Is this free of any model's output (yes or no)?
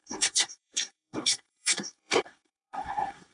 no